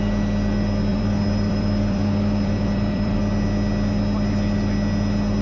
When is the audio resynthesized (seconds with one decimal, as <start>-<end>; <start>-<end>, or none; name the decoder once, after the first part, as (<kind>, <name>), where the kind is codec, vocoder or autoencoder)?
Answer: 0.9-3.2 (vocoder, BigVGAN v2)